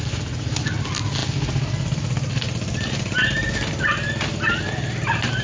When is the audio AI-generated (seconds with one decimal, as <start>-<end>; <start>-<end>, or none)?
none